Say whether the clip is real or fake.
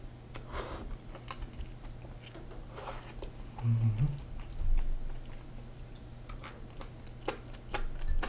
real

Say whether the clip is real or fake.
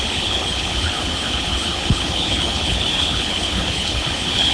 fake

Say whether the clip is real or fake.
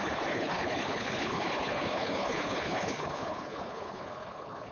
fake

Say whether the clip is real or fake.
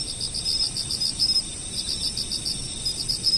real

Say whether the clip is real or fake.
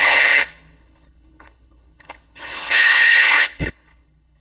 fake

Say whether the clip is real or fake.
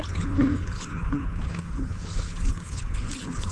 fake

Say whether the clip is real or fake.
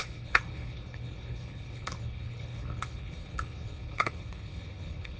fake